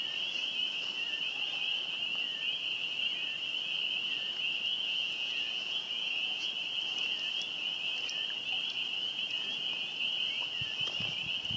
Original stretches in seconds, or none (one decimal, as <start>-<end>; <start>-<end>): 0.0-4.7; 6.5-11.6